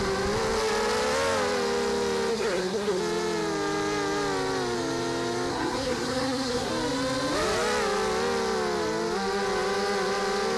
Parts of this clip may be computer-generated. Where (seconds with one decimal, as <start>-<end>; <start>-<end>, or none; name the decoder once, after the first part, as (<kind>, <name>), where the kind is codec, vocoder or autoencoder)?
2.3-3.0 (codec, SNAC); 5.5-6.7